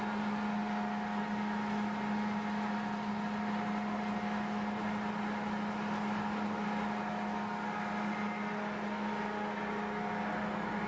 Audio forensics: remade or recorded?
recorded